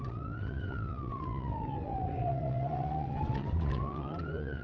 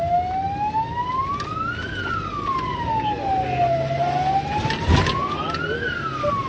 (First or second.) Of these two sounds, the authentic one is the second